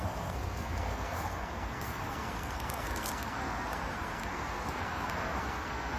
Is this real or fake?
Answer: fake